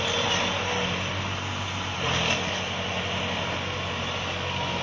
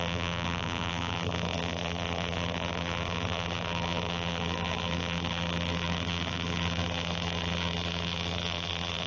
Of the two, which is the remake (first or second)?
second